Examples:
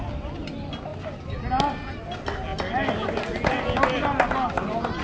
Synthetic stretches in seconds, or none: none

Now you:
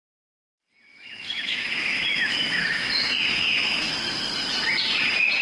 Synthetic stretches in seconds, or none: 0.9-4.0 (autoencoder, DAC-VAE)

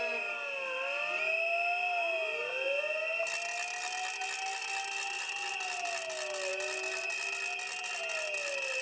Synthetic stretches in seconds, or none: none

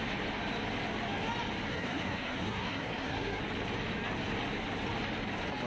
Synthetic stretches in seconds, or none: 1.7-3.4 (codec, SNAC)